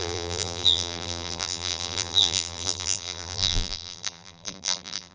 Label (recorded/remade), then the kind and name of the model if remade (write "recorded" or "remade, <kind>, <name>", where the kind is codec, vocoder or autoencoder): remade, vocoder, BigVGAN v2